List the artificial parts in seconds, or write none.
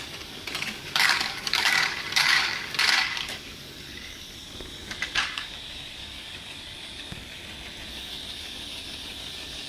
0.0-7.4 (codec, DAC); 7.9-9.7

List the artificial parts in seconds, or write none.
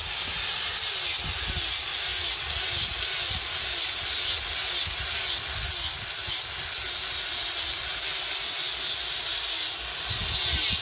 none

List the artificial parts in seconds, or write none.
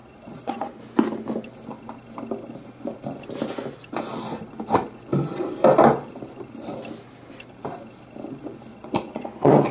0.0-0.8 (vocoder, Vocos); 8.7-9.7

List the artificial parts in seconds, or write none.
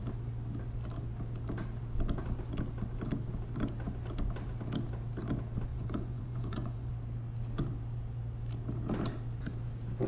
5.7-6.9 (vocoder, Vocos)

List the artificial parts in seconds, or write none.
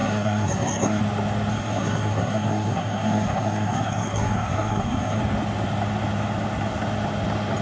0.0-1.0 (codec, SNAC); 1.5-5.2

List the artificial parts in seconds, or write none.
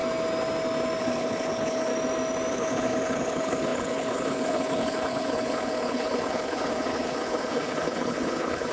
1.0-1.9 (codec, HILCodec); 2.5-8.7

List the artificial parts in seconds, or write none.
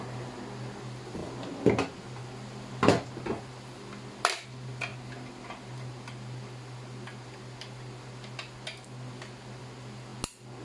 none